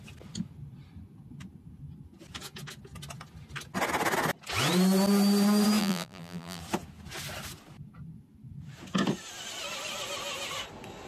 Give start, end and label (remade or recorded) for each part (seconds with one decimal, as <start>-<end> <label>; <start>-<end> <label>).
0.0-5.8 recorded; 5.8-6.6 remade; 6.6-11.1 recorded